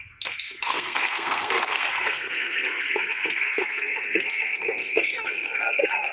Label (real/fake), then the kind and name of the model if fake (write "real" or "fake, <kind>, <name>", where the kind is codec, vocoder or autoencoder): fake, codec, SNAC